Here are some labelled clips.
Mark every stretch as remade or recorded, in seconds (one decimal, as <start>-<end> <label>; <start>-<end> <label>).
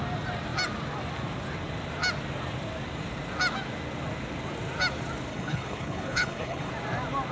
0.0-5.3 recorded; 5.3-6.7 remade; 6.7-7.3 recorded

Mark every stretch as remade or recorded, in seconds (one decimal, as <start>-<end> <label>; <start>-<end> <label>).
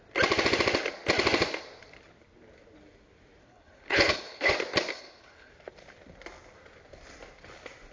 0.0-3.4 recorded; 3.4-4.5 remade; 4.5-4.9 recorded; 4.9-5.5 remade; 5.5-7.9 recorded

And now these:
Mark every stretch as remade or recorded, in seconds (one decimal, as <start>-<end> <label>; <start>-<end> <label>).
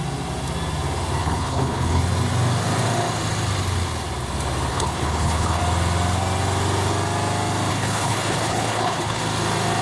0.0-1.2 recorded; 1.2-2.0 remade; 2.0-4.7 recorded; 4.7-5.6 remade; 5.6-7.7 recorded; 7.7-9.2 remade; 9.2-9.8 recorded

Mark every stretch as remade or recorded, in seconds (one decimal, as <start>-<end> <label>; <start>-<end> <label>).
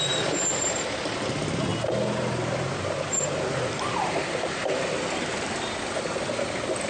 0.0-6.9 recorded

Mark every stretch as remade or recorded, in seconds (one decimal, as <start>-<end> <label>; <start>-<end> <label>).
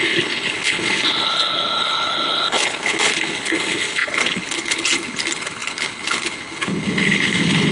0.0-7.7 remade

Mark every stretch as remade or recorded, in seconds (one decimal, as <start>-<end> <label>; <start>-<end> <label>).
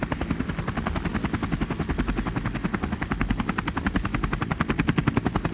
0.0-5.5 recorded